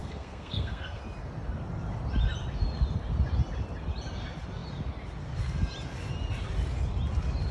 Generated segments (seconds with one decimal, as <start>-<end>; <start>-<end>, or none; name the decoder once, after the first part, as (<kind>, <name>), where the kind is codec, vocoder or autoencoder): 0.0-1.0 (codec, SNAC)